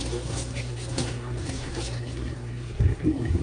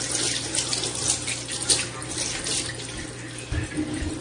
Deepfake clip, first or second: first